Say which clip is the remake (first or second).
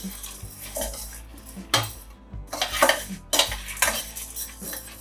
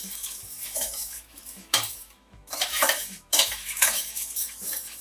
second